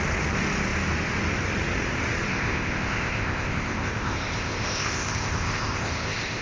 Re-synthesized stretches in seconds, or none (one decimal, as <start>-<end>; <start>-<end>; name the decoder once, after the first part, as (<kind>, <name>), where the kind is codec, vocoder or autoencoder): 2.3-6.4 (codec, ZipCodec)